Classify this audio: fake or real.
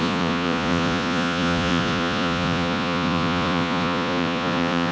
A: fake